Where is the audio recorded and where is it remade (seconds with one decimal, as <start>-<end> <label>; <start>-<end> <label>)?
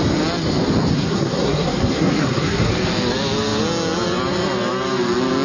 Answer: 0.0-0.9 recorded; 0.9-2.7 remade; 2.7-5.4 recorded